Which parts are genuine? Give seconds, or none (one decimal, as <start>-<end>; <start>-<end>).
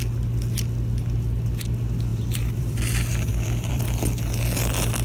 0.0-2.1; 2.8-3.3; 3.8-5.0